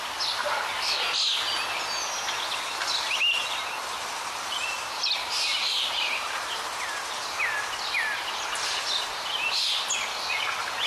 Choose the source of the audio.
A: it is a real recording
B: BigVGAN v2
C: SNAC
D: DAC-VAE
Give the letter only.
A